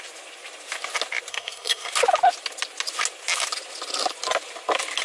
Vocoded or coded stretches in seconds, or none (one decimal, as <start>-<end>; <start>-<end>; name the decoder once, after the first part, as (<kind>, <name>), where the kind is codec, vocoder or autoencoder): 1.3-1.9 (codec, SNAC)